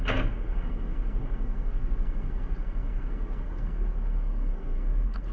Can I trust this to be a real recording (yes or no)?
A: no